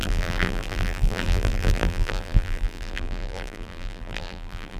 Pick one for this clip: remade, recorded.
remade